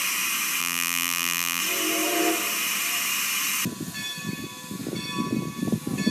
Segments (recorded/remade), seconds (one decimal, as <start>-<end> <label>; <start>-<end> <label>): 0.0-0.6 recorded; 0.6-1.6 remade; 1.6-6.1 recorded